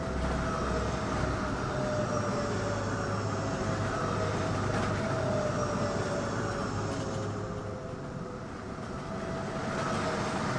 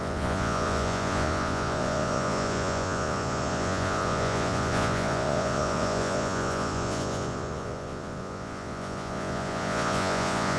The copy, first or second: second